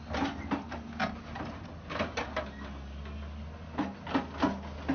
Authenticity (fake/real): real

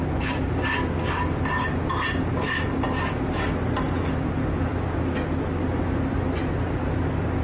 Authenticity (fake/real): real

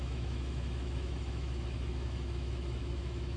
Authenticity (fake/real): fake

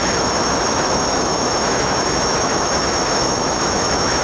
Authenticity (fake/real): fake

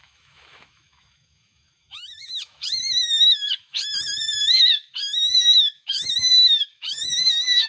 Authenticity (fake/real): fake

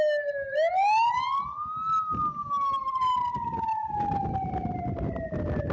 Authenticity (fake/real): real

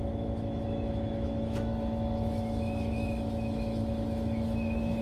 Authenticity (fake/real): fake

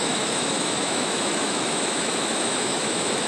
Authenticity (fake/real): fake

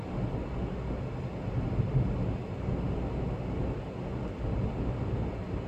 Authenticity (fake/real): real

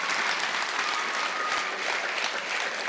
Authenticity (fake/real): real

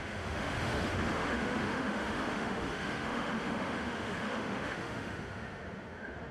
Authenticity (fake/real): fake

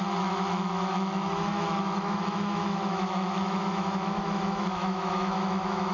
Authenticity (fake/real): fake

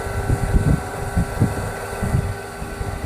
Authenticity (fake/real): real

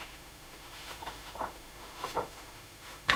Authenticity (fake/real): fake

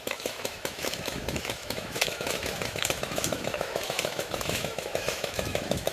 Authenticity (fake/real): fake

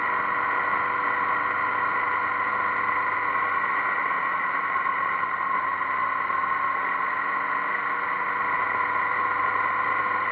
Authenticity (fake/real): real